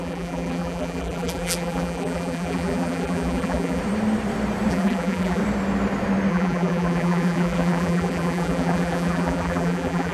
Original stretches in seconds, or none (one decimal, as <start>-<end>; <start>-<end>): 3.8-4.7; 5.4-6.3